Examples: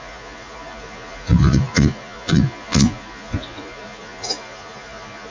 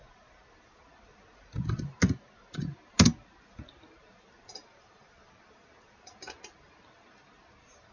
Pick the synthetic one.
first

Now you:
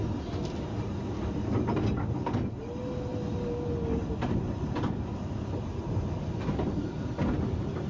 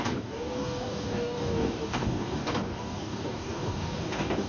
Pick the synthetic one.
second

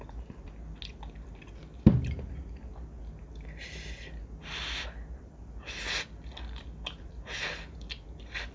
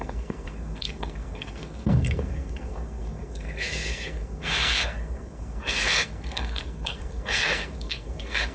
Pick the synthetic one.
second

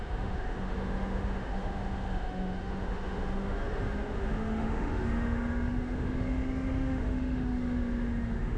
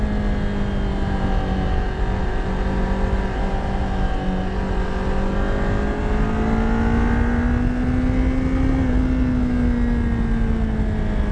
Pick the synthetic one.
first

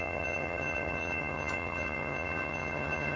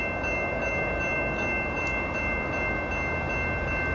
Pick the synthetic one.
first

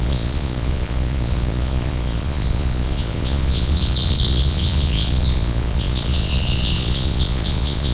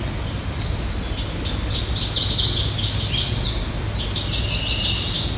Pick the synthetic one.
first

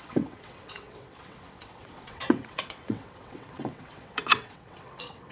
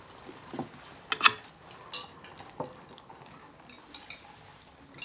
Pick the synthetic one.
first